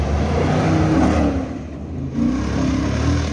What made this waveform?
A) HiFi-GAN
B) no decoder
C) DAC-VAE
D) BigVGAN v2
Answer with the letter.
B